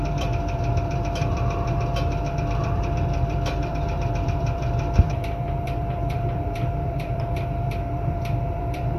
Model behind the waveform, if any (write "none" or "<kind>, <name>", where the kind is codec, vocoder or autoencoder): vocoder, BigVGAN v2